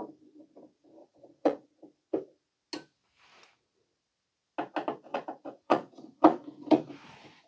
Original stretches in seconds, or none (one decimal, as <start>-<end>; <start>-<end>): 0.0-1.0; 1.7-5.1; 6.9-7.5